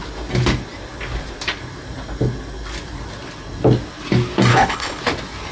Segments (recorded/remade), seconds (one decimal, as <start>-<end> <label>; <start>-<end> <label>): 0.0-4.5 recorded; 4.5-5.0 remade; 5.0-5.5 recorded